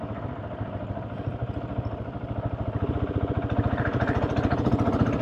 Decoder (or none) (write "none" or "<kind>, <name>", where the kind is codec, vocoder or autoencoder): none